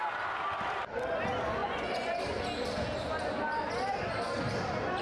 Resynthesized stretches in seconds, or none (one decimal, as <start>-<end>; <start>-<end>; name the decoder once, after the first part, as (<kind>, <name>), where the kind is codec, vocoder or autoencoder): 1.6-2.2 (vocoder, Vocos)